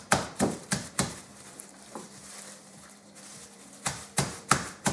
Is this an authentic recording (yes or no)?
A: no